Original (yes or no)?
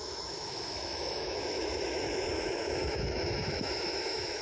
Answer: no